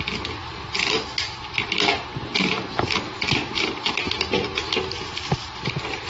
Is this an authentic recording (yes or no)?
yes